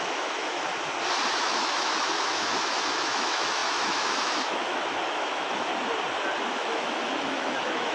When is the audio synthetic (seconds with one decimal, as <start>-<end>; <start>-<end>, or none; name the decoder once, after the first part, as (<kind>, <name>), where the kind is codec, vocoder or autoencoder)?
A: 0.0-0.7 (autoencoder, DAC-VAE); 1.4-5.7; 6.5-7.9